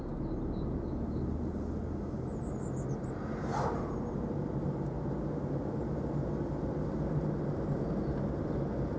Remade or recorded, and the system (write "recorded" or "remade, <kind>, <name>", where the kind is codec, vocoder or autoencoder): recorded